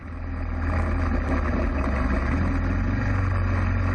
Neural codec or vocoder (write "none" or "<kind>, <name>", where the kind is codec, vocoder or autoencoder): none